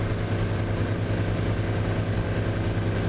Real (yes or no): yes